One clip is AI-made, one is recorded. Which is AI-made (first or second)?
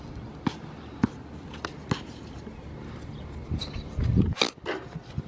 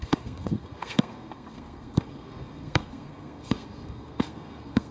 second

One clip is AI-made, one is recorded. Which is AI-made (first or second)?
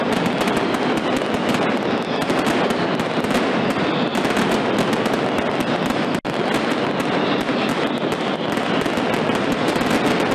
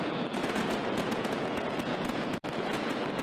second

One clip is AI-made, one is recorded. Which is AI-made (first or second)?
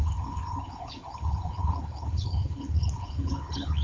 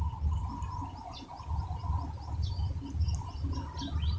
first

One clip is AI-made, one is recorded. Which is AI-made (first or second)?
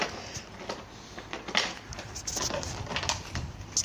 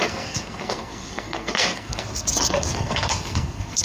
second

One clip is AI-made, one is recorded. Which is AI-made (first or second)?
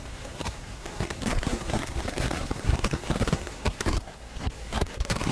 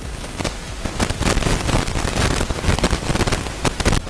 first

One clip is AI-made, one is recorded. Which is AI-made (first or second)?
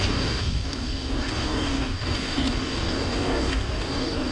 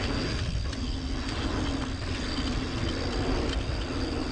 first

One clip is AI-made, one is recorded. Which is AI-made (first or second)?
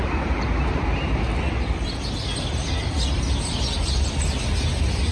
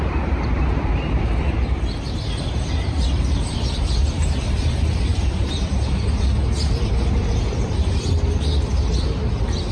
second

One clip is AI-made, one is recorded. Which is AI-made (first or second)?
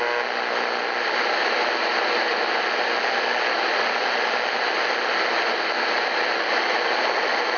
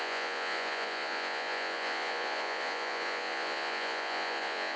second